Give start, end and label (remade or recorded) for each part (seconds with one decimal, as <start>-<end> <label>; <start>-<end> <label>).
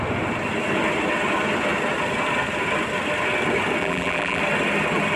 0.0-3.8 recorded; 3.8-4.4 remade; 4.4-5.2 recorded